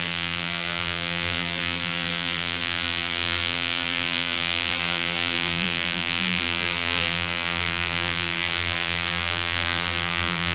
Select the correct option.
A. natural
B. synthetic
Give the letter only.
B